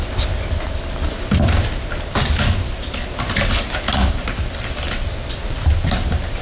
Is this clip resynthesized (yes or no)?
yes